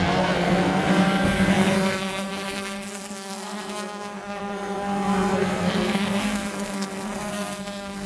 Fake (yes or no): yes